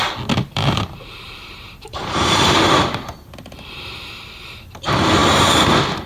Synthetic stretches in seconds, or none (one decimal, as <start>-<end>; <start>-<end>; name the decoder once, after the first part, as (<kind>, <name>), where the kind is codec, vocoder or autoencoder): 0.4-4.1 (vocoder, BigVGAN v2)